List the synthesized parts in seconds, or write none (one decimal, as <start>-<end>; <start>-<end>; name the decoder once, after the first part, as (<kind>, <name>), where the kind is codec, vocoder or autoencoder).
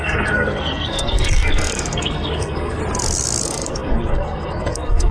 0.0-2.8 (codec, SNAC); 3.4-5.1